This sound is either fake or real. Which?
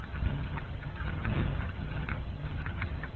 fake